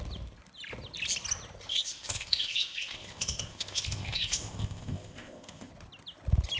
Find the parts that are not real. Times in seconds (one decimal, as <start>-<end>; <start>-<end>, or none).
1.7-5.7